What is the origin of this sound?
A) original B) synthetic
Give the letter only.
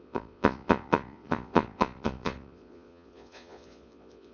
B